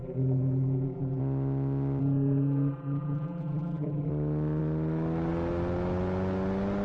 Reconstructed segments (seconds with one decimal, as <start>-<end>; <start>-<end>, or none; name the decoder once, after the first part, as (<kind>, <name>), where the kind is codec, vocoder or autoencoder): 0.0-1.2 (vocoder, BigVGAN v2); 2.0-4.1